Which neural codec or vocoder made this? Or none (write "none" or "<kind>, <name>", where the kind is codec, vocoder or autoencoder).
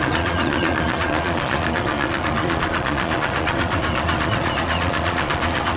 vocoder, Vocos